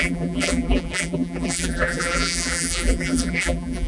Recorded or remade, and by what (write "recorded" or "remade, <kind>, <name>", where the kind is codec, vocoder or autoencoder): remade, vocoder, BigVGAN v2